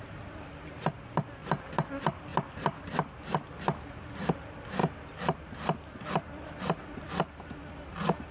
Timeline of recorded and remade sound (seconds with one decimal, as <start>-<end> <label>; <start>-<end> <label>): 0.0-8.3 recorded